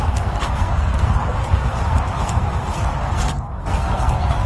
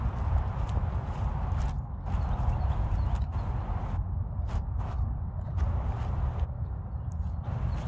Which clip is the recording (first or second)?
second